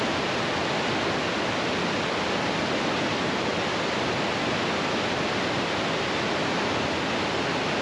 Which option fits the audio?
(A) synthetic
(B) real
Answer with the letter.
B